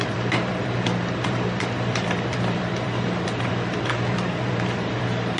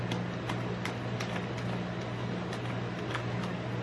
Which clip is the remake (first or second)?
first